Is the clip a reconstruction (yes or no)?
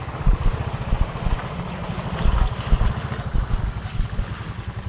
no